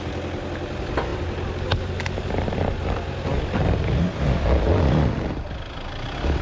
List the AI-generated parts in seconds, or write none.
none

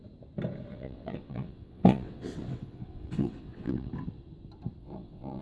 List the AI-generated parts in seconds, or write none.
0.7-3.9; 4.8-5.4

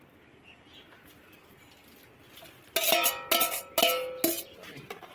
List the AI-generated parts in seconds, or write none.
none

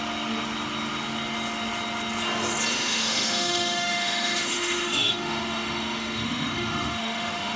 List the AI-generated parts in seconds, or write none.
2.7-7.6

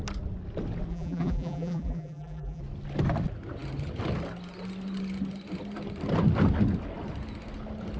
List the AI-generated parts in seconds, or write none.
0.9-2.6

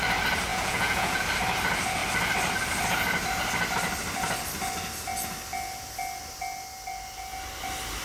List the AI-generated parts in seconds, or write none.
0.5-1.2

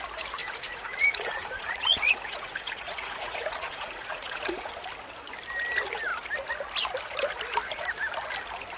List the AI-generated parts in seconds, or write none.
0.4-4.7

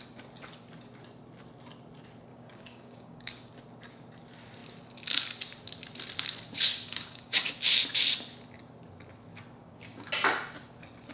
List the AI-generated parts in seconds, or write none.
2.3-3.5; 6.7-7.5; 9.6-10.1